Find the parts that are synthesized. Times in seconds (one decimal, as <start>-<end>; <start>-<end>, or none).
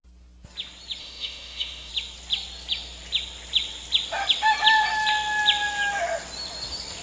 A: 1.0-1.9